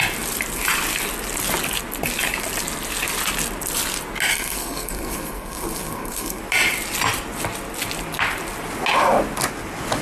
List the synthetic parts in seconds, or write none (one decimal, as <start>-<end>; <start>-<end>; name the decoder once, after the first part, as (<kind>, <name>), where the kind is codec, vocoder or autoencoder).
4.3-6.4 (codec, SNAC)